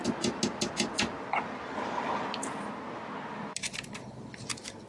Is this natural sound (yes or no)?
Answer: yes